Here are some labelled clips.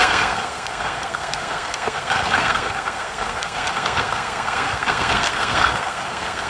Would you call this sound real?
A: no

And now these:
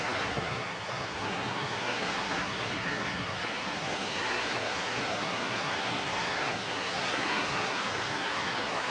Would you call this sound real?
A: no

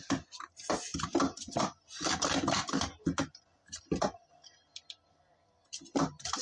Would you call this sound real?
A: yes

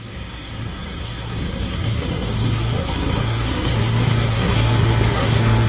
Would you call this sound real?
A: no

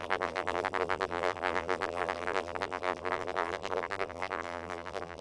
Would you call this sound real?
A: no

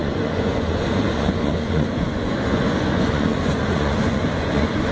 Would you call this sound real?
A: no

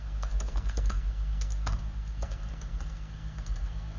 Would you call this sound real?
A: no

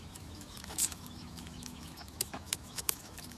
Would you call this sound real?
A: no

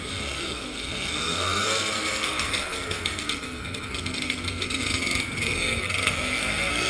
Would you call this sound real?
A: no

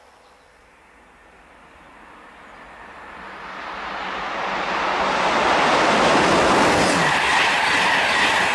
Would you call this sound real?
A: yes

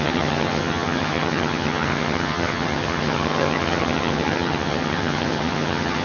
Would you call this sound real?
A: no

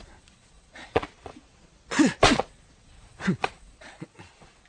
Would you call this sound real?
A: no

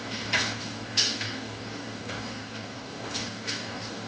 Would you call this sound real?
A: no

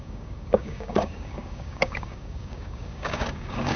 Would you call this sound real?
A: no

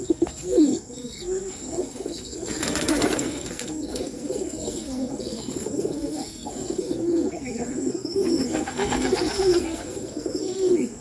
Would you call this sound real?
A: no